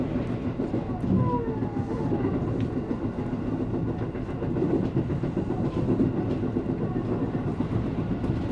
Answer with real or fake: real